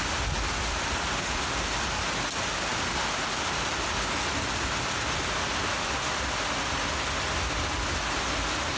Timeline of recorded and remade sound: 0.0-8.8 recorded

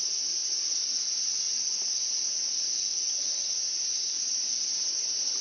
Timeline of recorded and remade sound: 0.0-0.4 remade; 0.4-1.1 recorded; 1.1-1.5 remade; 1.5-3.8 recorded; 3.8-5.4 remade

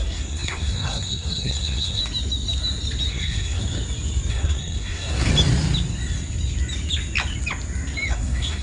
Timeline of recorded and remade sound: 0.0-2.0 remade; 2.0-3.1 recorded; 3.1-3.6 remade; 3.6-4.3 recorded; 4.3-5.3 remade; 5.3-8.1 recorded; 8.1-8.6 remade

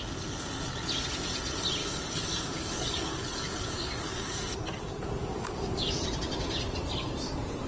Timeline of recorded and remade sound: 0.0-1.8 recorded; 1.8-4.4 remade; 4.4-5.2 recorded; 5.2-6.0 remade; 6.0-7.7 recorded

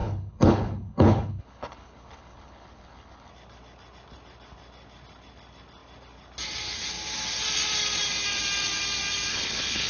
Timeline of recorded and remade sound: 0.0-3.3 remade; 3.3-9.3 recorded; 9.3-9.9 remade